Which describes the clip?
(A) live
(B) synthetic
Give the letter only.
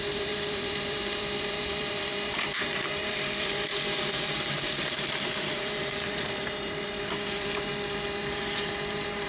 B